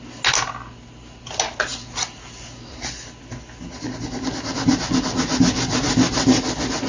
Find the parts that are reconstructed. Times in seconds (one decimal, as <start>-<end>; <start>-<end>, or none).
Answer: none